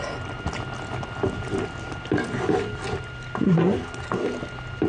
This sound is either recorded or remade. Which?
recorded